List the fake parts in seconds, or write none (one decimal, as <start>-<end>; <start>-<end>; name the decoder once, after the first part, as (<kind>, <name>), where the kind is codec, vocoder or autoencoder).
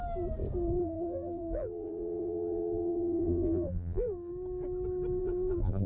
0.8-4.3 (vocoder, BigVGAN v2); 5.2-5.9